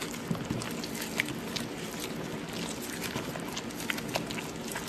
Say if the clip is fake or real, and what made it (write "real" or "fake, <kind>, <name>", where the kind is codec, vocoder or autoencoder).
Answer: real